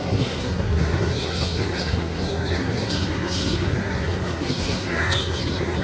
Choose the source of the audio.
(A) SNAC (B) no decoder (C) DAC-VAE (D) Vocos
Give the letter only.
A